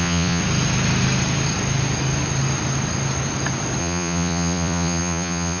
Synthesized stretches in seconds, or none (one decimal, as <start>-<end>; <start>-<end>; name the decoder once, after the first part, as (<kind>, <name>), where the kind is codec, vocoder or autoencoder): 0.0-0.4 (vocoder, Vocos); 3.8-5.6